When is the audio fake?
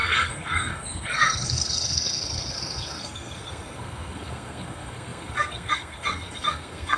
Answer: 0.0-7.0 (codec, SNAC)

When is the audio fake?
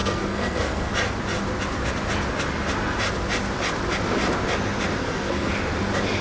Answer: 0.0-0.9 (codec, SNAC); 5.0-5.5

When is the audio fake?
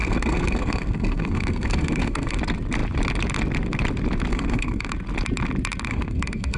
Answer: 0.0-2.4 (codec, SNAC); 4.3-4.9; 5.9-6.6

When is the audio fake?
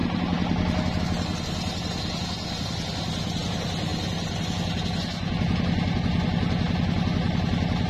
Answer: none